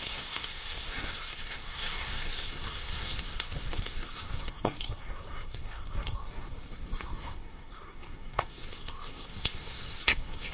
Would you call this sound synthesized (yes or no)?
yes